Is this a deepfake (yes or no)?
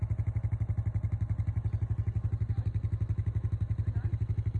no